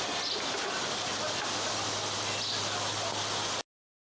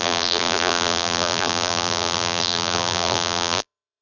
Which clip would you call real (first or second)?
first